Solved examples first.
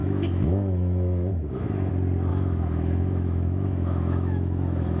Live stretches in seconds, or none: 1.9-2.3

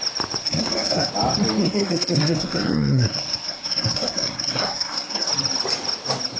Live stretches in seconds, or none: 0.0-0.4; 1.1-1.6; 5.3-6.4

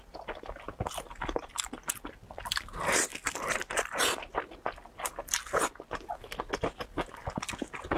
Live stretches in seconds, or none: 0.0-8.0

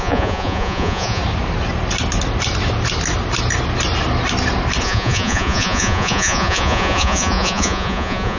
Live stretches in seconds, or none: 1.2-4.8

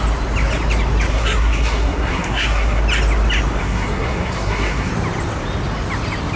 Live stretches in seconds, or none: 0.0-1.1; 2.8-3.6; 4.9-6.4